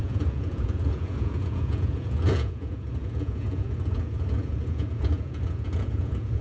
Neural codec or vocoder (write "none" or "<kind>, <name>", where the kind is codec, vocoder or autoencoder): vocoder, Vocos